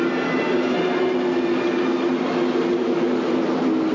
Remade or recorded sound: recorded